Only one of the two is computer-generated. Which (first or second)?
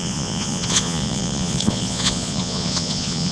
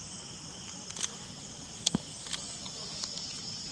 first